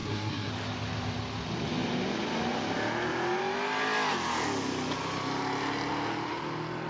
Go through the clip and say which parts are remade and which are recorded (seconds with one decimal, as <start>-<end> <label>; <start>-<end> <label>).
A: 0.0-0.5 remade; 0.5-6.9 recorded